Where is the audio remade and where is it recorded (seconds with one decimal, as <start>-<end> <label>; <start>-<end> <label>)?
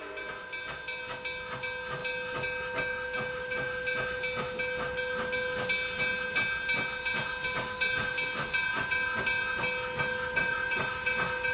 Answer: 0.0-11.5 recorded